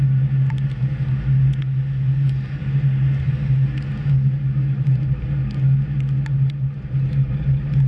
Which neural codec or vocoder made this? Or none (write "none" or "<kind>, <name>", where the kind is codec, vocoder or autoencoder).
none